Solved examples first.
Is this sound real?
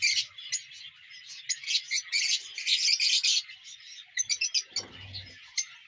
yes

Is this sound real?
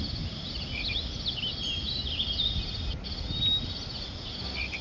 yes